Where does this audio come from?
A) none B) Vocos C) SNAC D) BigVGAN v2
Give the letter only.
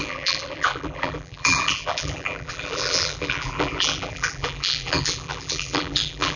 D